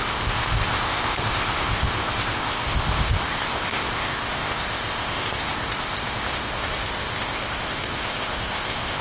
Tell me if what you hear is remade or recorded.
remade